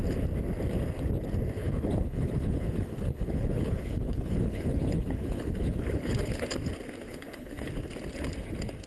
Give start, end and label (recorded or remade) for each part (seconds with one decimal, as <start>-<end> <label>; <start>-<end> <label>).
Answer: 0.0-1.6 recorded; 1.6-6.4 remade; 6.4-7.1 recorded; 7.1-7.7 remade; 7.7-8.9 recorded